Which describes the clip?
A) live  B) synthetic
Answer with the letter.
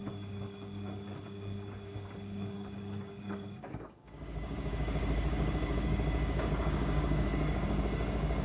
B